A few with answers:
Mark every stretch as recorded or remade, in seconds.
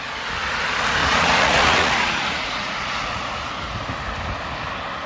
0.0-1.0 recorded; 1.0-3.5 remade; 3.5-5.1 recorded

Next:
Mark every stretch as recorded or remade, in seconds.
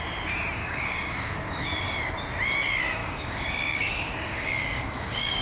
0.0-0.6 recorded; 0.6-1.8 remade; 1.8-3.0 recorded; 3.0-5.4 remade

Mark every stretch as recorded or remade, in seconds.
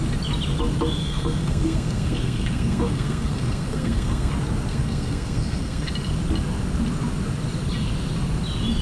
0.0-1.0 recorded; 1.0-4.3 remade; 4.3-4.7 recorded; 4.7-5.9 remade; 5.9-8.8 recorded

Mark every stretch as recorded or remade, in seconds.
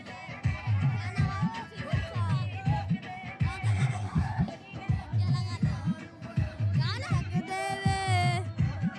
0.0-3.7 recorded; 3.7-4.5 remade; 4.5-9.0 recorded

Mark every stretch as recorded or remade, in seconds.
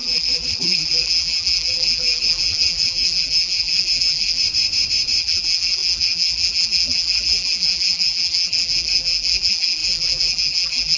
0.0-4.4 remade; 4.4-5.2 recorded; 5.2-11.0 remade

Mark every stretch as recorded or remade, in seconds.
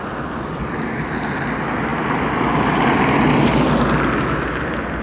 0.0-5.0 recorded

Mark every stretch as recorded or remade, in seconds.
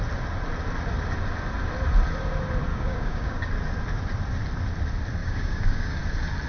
0.0-2.7 recorded; 2.7-3.5 remade; 3.5-5.2 recorded; 5.2-6.0 remade; 6.0-6.5 recorded